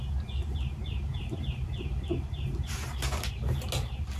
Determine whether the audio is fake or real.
real